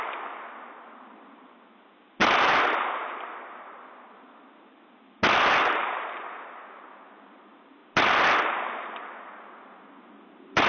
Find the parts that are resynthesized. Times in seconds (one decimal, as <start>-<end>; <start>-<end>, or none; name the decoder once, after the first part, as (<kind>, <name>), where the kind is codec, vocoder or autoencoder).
none